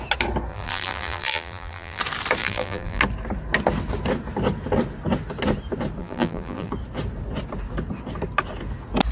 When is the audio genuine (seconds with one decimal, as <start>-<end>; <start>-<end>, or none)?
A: 0.0-0.5; 2.0-2.4; 3.0-6.0; 6.7-9.1